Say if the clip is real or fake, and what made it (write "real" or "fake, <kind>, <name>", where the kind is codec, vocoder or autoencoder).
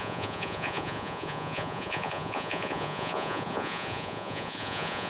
fake, vocoder, Vocos